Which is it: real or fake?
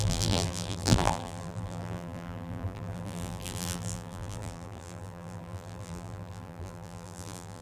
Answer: fake